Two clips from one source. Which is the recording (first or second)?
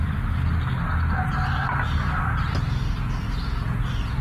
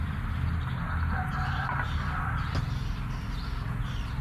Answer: first